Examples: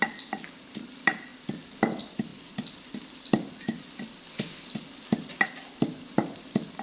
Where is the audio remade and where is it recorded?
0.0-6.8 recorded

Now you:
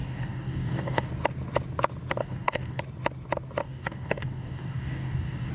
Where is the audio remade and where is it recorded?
0.0-1.1 remade; 1.1-2.2 recorded; 2.2-2.8 remade; 2.8-3.6 recorded; 3.6-5.5 remade

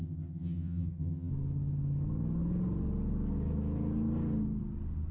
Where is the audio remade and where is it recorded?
0.0-1.3 remade; 1.3-5.1 recorded

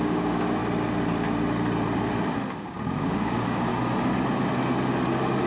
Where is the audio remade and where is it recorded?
0.0-0.6 remade; 0.6-2.6 recorded; 2.6-3.7 remade; 3.7-5.5 recorded

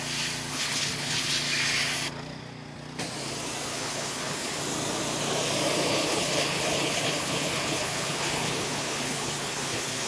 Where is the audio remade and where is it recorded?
0.0-0.5 recorded; 0.5-1.3 remade; 1.3-3.7 recorded; 3.7-4.6 remade; 4.6-5.9 recorded; 5.9-10.1 remade